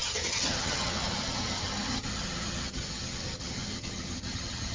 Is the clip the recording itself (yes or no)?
no